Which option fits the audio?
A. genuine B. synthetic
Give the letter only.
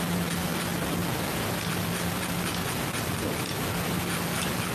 A